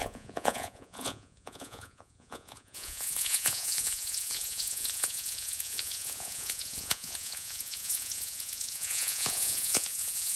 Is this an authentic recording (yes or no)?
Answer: no